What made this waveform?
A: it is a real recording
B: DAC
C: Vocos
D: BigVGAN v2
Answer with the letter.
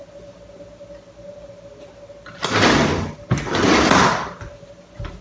A